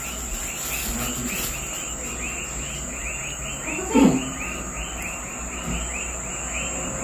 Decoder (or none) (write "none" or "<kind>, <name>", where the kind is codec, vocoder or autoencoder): none